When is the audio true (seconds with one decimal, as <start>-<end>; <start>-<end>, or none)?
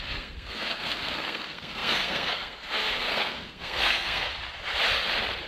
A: 4.3-5.5